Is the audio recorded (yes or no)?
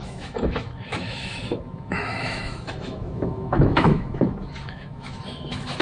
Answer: no